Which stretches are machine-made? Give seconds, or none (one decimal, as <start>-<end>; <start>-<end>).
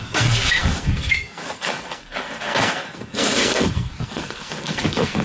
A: 0.0-5.2